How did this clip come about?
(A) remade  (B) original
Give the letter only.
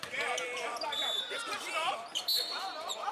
A